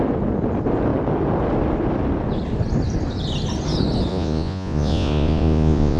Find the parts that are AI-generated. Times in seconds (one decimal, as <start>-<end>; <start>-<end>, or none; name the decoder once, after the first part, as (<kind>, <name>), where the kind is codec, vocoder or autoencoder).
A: 4.1-6.0 (vocoder, Vocos)